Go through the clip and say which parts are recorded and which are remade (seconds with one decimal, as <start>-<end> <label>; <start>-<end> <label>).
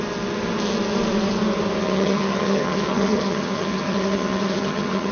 0.0-1.8 recorded; 1.8-5.1 remade